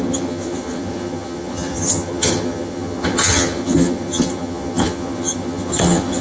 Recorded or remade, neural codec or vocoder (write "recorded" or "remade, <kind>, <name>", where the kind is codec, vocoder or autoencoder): remade, vocoder, HiFi-GAN